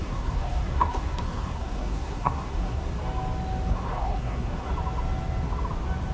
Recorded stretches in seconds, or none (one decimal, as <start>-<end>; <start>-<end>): 2.9-3.7; 4.7-6.1